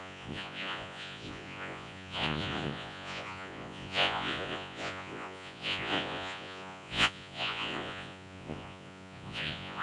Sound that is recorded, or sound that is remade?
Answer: remade